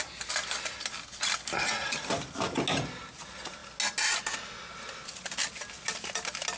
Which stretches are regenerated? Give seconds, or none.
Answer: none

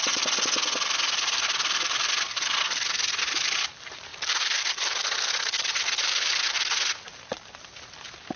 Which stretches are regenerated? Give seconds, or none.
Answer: none

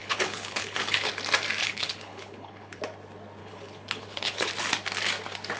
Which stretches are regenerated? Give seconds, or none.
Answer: 0.0-1.1 (codec, HILCodec); 1.6-2.8; 3.4-4.5

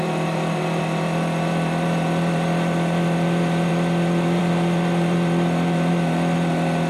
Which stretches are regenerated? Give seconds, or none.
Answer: 0.0-6.9 (vocoder, BigVGAN v2)

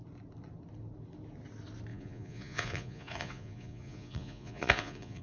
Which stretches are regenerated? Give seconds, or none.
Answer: 1.9-5.2 (vocoder, Vocos)

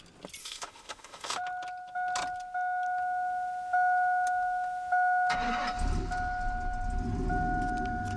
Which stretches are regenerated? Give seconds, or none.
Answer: 0.4-1.4 (autoencoder, DAC-VAE)

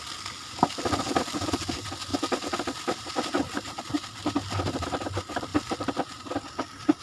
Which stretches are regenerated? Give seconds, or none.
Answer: none

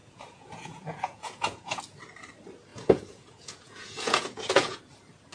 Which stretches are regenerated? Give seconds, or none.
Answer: 0.0-1.8 (vocoder, Vocos); 2.7-4.8